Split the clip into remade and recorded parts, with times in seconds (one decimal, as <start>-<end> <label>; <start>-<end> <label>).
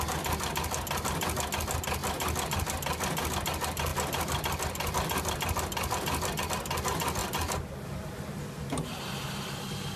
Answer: 0.0-3.9 recorded; 3.9-6.4 remade; 6.4-7.2 recorded; 7.2-8.1 remade; 8.1-10.0 recorded